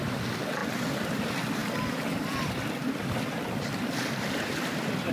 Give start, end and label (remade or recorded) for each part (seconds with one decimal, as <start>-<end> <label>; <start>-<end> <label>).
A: 0.0-0.6 recorded; 0.6-1.2 remade; 1.2-1.6 recorded; 1.6-5.1 remade